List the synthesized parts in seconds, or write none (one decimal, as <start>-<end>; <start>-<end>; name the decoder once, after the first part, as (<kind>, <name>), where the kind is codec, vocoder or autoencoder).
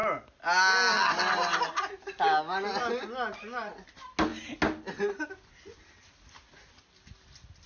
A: none